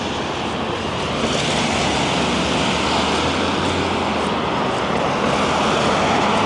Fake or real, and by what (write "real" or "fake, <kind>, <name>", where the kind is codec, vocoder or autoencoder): real